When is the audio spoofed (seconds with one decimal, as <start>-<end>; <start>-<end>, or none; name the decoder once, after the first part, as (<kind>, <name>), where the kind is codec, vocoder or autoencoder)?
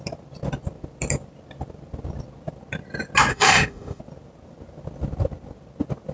3.3-4.0 (autoencoder, DAC-VAE)